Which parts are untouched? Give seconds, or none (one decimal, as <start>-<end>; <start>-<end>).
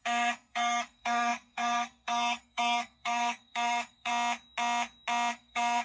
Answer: 4.1-5.3